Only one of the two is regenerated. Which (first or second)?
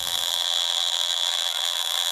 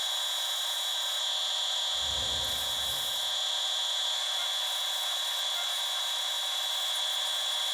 first